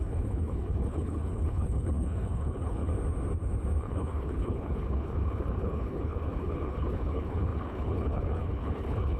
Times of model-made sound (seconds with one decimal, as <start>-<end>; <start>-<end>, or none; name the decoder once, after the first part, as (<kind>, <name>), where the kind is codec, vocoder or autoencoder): 0.0-2.9 (codec, HILCodec); 3.8-9.2

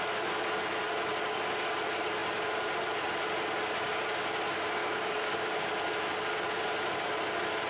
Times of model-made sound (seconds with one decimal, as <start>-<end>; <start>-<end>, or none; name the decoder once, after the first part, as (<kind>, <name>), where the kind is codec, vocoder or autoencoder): 4.8-5.7 (codec, DAC)

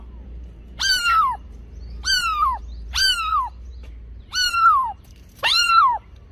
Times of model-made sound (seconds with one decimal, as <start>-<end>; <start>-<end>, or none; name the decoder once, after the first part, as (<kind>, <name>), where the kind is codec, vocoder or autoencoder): 0.0-6.3 (vocoder, BigVGAN v2)

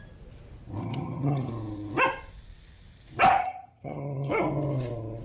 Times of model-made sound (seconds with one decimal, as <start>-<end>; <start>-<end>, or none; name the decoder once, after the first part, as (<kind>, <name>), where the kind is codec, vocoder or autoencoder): 0.8-1.5 (vocoder, HiFi-GAN); 3.4-4.3

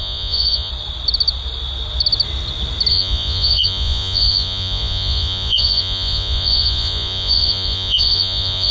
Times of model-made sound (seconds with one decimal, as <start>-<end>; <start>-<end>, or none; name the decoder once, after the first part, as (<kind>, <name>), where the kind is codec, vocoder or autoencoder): 0.0-0.7 (vocoder, Vocos); 2.9-8.7

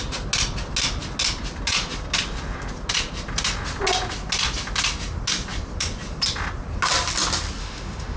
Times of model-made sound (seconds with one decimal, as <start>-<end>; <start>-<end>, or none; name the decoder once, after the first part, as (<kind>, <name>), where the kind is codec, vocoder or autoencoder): 7.6-8.2 (autoencoder, DAC-VAE)

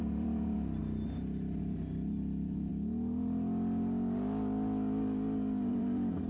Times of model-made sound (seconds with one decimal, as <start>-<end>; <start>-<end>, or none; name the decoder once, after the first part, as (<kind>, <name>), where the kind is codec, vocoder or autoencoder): 0.0-0.8 (vocoder, BigVGAN v2); 1.6-2.7; 5.7-6.3